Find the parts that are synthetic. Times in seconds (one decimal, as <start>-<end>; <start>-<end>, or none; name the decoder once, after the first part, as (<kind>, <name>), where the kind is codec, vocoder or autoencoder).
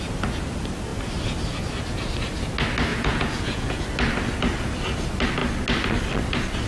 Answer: 2.9-3.8 (vocoder, Vocos)